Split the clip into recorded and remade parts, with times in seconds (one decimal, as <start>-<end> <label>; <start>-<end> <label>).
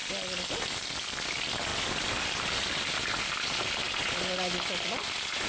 0.0-0.7 remade; 0.7-1.7 recorded; 1.7-3.2 remade; 3.2-5.5 recorded